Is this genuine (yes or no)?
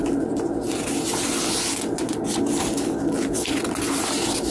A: yes